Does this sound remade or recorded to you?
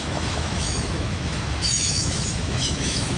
remade